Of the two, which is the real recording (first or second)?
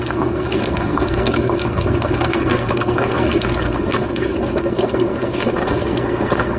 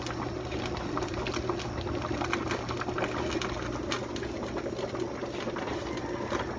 second